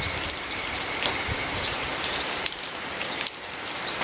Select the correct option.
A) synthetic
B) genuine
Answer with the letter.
A